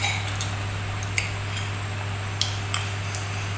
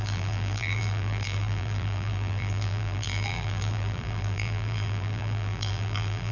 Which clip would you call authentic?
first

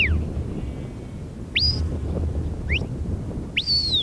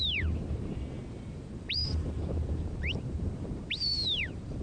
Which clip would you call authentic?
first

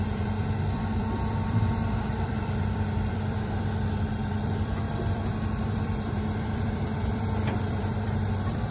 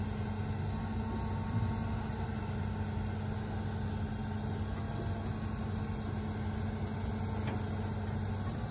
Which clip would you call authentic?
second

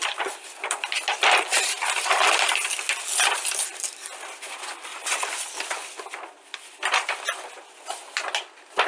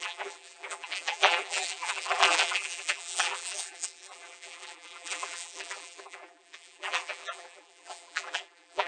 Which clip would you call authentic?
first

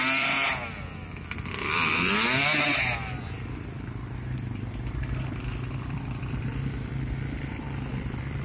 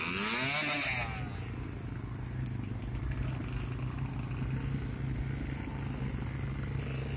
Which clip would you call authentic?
second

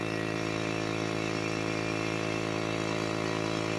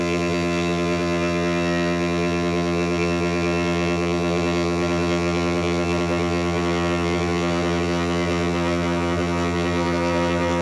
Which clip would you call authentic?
first